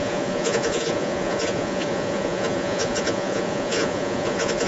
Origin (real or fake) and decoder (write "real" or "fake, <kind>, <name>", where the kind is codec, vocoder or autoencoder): fake, vocoder, Vocos